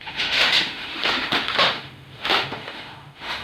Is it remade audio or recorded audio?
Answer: remade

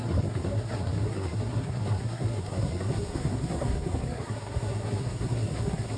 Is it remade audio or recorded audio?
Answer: remade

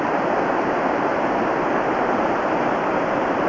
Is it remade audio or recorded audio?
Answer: remade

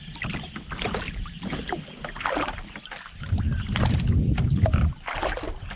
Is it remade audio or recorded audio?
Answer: recorded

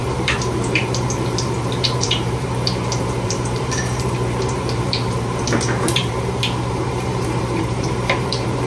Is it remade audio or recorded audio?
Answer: remade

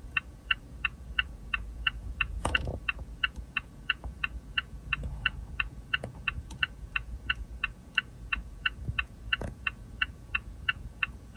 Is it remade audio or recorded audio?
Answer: remade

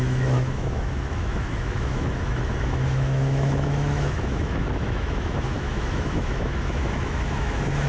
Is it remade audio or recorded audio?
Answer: remade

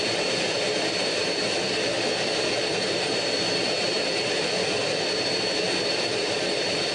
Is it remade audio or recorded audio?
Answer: remade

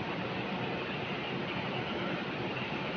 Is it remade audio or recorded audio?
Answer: recorded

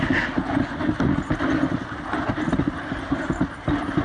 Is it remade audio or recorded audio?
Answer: recorded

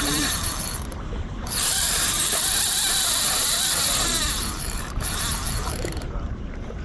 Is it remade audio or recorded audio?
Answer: remade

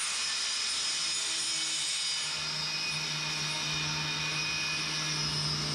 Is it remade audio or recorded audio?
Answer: recorded